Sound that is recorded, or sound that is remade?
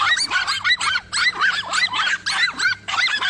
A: recorded